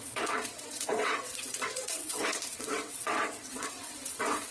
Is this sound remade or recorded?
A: remade